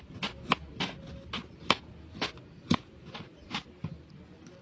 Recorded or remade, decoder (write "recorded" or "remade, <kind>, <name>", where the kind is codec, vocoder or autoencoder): recorded